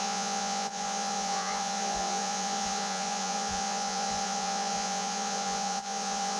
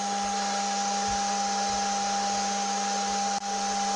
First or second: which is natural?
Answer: second